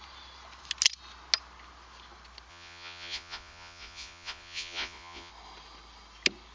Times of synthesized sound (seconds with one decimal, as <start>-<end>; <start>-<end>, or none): 2.5-5.3